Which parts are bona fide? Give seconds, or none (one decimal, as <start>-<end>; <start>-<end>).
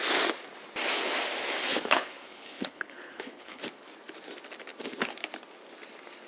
0.0-1.7; 3.6-6.3